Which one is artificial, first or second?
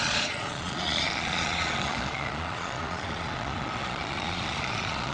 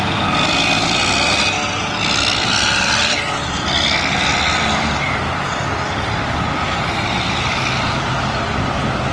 first